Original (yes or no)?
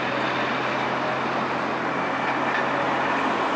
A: yes